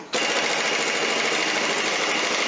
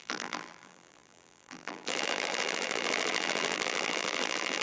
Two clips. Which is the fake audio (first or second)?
second